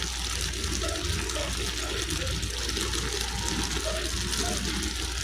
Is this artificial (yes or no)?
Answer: no